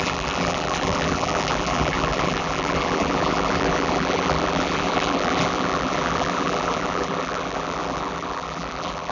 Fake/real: fake